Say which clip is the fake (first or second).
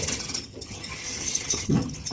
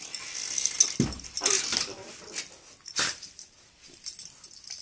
first